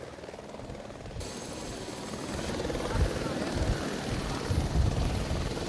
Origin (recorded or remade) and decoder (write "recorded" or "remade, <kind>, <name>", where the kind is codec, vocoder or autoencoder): recorded